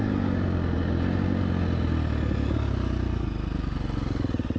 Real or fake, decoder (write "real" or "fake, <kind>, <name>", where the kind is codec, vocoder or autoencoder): real